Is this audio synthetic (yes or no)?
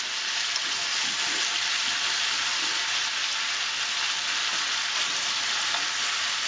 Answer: no